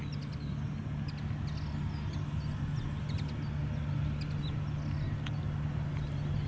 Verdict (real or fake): real